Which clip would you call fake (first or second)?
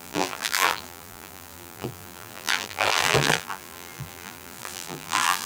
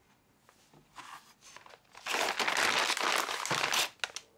first